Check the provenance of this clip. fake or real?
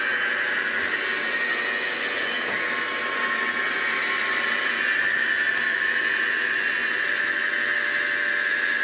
real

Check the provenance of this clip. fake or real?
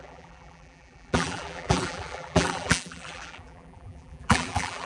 fake